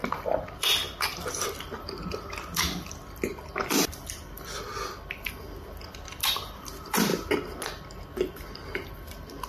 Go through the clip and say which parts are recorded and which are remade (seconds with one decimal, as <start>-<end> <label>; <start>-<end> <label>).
0.0-7.1 remade; 7.1-9.5 recorded